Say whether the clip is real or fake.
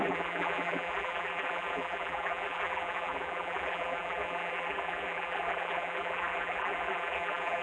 fake